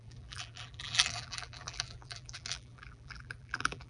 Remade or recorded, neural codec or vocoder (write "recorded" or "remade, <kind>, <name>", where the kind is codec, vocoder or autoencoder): remade, vocoder, BigVGAN v2